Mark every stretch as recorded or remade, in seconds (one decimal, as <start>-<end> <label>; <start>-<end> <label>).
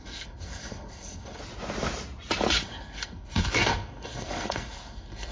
0.0-1.4 remade; 1.4-2.6 recorded; 2.6-5.3 remade